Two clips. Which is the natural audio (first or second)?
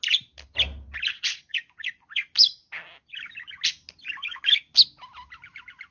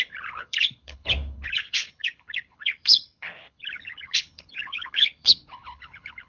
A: first